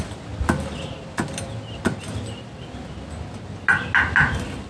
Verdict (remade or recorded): recorded